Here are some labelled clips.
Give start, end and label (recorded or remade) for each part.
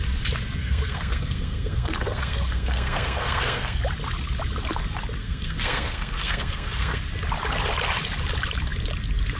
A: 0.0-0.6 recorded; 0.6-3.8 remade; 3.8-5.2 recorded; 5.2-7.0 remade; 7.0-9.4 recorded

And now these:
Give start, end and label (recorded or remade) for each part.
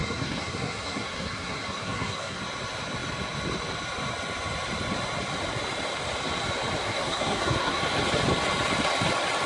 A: 0.0-2.4 remade; 2.4-6.8 recorded; 6.8-7.8 remade; 7.8-9.5 recorded